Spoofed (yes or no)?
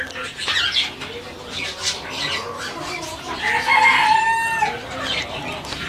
no